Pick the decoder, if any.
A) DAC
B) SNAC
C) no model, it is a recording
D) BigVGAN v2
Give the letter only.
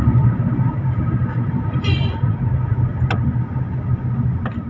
C